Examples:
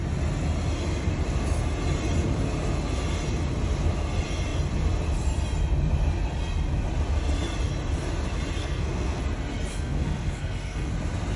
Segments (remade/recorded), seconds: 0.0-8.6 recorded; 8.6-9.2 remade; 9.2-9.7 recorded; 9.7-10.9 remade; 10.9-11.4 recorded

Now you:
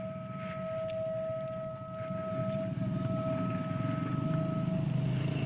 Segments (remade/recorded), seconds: 0.0-5.5 recorded

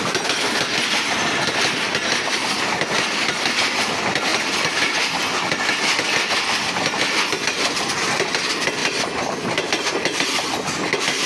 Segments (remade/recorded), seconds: 0.0-11.3 recorded

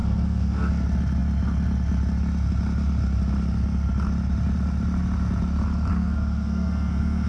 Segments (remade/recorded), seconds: 0.0-0.7 remade; 0.7-5.9 recorded; 5.9-7.3 remade

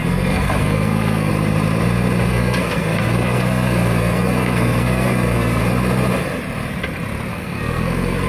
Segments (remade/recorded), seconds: 0.0-1.3 remade; 1.3-2.3 recorded; 2.3-5.6 remade; 5.6-7.3 recorded; 7.3-8.3 remade

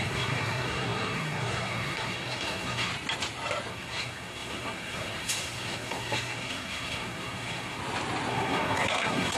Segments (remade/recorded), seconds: 0.0-2.9 remade; 2.9-3.7 recorded; 3.7-7.8 remade; 7.8-8.3 recorded; 8.3-9.4 remade

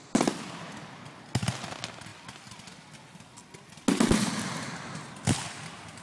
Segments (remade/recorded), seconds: 0.0-6.0 recorded

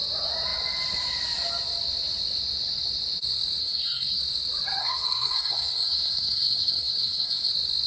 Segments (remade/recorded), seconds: 0.0-3.6 recorded; 3.6-4.2 remade; 4.2-4.8 recorded; 4.8-7.5 remade; 7.5-7.9 recorded